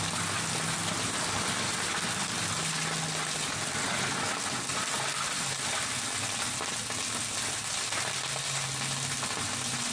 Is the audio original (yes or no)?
yes